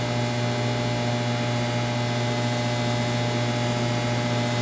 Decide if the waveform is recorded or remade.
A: recorded